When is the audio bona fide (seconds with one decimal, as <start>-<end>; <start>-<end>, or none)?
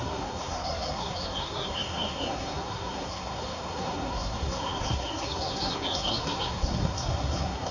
none